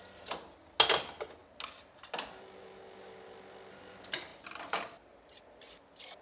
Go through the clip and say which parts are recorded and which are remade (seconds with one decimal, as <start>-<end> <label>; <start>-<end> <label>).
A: 0.0-4.3 recorded; 4.3-5.4 remade; 5.4-6.2 recorded